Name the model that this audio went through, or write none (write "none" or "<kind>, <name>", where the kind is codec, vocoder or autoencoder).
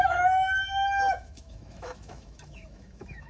autoencoder, DAC-VAE